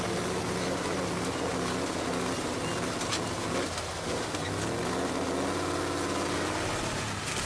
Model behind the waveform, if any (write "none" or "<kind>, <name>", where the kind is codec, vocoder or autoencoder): none